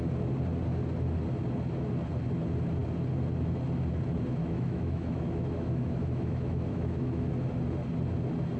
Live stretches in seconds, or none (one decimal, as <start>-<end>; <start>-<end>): 0.0-4.4; 7.3-8.6

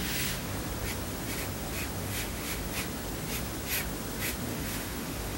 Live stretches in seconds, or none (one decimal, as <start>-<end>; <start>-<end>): 0.5-2.0; 2.6-4.5

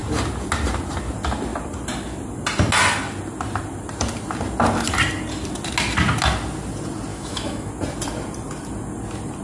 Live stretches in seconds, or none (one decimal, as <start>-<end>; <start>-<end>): 0.0-7.1; 7.7-9.4

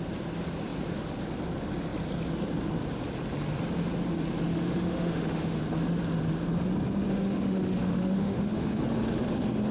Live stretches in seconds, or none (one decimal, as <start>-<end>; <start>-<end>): 0.0-4.5; 5.6-7.1; 8.8-9.7

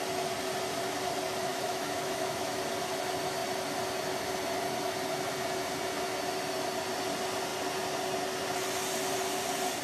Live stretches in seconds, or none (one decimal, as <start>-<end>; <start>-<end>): 0.0-1.5; 2.6-9.8